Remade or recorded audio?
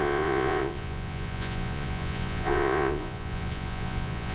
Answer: remade